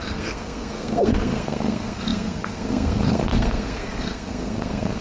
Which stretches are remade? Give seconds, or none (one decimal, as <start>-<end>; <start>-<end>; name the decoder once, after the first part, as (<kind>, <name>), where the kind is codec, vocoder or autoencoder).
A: 0.0-5.0 (codec, SNAC)